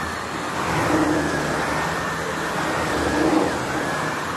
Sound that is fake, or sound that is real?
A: real